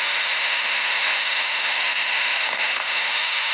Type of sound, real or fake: fake